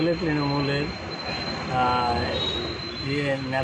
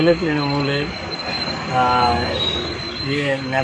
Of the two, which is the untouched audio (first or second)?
first